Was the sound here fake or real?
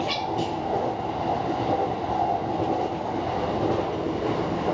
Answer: real